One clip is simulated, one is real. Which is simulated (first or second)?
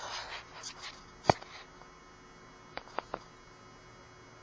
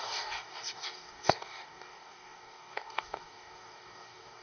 second